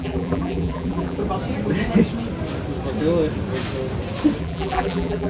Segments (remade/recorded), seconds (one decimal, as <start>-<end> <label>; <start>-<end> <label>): 0.0-1.2 remade; 1.2-4.4 recorded; 4.4-5.3 remade